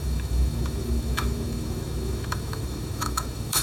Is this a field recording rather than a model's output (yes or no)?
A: no